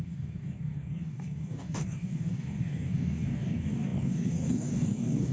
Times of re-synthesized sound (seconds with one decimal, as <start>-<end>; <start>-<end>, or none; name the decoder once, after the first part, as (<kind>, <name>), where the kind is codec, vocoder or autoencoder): 0.0-5.3 (codec, DAC)